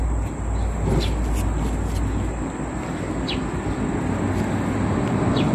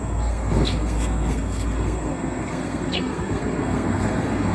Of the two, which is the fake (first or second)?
second